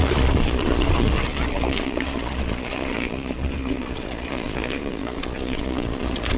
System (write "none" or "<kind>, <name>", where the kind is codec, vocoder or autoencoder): vocoder, Vocos